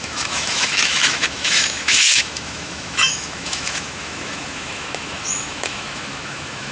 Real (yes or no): no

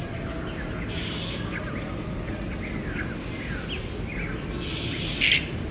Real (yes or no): yes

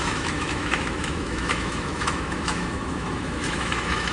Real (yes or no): no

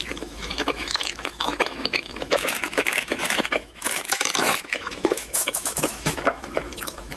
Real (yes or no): no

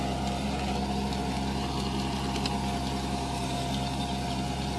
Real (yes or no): yes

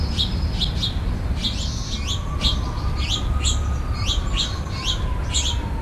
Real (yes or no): yes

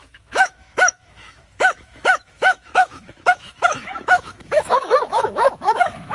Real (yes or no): no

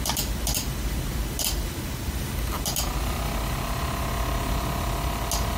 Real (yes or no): yes